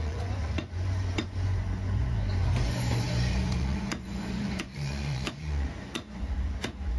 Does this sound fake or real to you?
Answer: fake